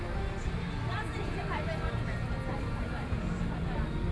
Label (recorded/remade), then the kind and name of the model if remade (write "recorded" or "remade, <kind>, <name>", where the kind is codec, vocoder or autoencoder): recorded